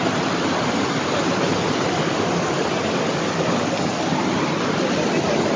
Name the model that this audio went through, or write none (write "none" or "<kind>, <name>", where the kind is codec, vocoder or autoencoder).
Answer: none